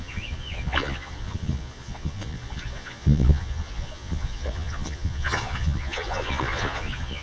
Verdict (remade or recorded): remade